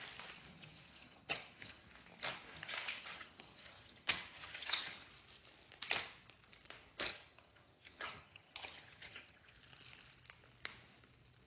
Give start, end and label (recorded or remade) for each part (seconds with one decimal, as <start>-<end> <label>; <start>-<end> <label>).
0.0-0.5 recorded; 0.5-1.9 remade; 1.9-2.5 recorded; 2.5-5.1 remade; 5.1-7.1 recorded; 7.1-9.5 remade; 9.5-11.5 recorded